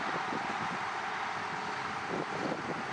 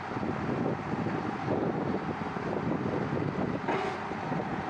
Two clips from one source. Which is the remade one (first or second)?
first